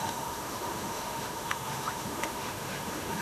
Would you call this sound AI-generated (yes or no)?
yes